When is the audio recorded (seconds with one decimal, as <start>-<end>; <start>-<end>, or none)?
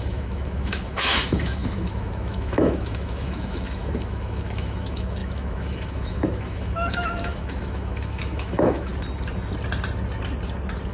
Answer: 8.9-10.9